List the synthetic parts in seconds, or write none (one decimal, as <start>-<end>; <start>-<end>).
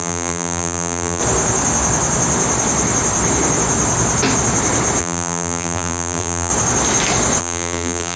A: 0.0-1.2; 5.0-6.5; 7.4-8.2